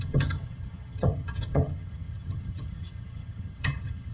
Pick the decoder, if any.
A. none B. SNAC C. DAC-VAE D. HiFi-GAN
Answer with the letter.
D